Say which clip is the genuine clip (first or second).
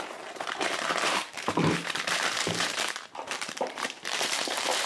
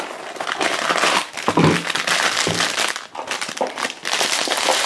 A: second